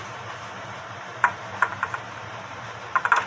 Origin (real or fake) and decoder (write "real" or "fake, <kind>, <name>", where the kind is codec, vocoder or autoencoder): fake, vocoder, BigVGAN v2